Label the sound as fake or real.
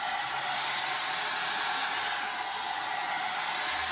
real